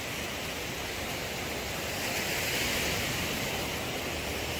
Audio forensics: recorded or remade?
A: recorded